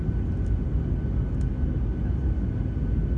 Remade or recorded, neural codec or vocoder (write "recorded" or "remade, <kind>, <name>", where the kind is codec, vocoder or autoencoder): recorded